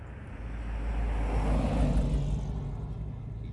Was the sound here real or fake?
real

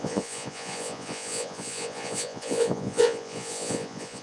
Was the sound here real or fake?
fake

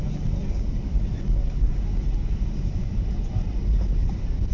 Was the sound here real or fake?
real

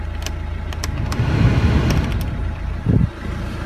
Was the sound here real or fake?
real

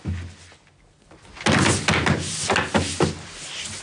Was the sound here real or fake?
real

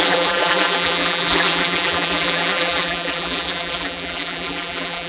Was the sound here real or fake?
fake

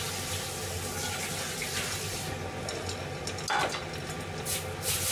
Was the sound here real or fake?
real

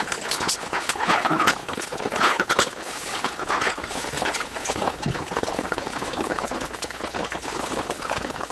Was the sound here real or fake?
fake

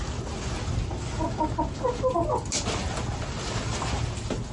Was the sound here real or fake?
real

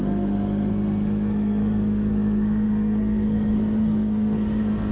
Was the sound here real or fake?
fake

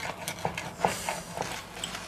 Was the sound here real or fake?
real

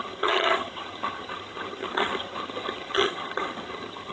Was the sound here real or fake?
fake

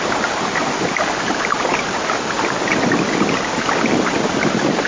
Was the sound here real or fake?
real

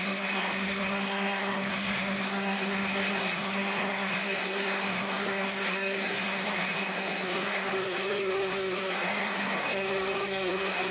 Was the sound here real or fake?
fake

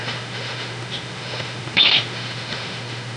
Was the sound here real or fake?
fake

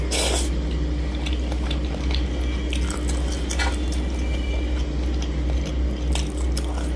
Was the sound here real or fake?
real